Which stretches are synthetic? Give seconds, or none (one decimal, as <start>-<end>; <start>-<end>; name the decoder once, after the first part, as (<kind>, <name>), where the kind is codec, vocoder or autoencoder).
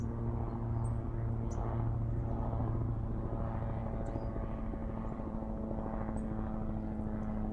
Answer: 3.8-4.3 (vocoder, BigVGAN v2); 4.8-5.6